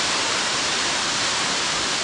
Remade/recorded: remade